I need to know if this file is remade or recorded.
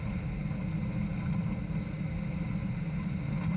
recorded